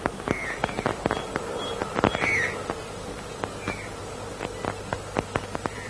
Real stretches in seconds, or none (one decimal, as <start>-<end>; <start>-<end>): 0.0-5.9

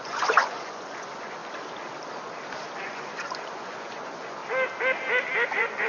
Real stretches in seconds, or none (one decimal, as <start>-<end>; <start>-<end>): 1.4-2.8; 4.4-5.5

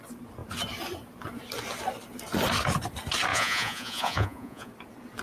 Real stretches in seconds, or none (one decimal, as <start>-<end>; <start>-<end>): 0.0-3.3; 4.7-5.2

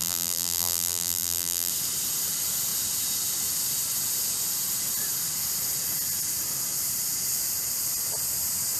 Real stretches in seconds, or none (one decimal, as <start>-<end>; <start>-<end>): 1.7-8.8

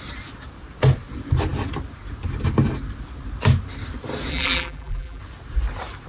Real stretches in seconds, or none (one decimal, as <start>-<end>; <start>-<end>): 0.0-4.3; 5.2-6.1

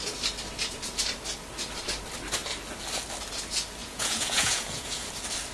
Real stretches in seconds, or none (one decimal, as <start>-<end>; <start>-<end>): 0.0-3.8; 5.1-5.5

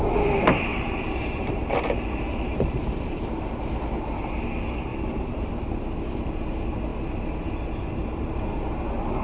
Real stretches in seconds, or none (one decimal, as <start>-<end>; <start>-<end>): 0.0-0.7; 3.3-4.9; 5.5-9.2

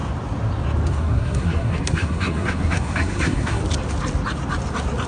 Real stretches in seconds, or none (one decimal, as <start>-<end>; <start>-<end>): 0.0-0.9; 3.6-5.1